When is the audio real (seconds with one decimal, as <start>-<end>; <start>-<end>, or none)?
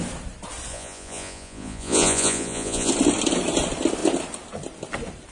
0.0-0.7; 2.9-5.3